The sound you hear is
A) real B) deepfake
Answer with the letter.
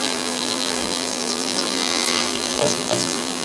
B